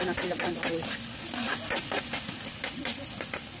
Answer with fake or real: real